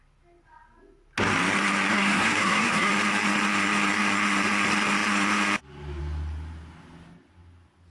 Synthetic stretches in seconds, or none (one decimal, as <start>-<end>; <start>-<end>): 1.9-2.9